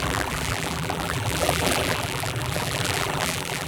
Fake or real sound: fake